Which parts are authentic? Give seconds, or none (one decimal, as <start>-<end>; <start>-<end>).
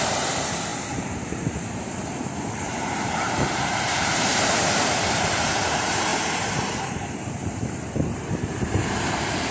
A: none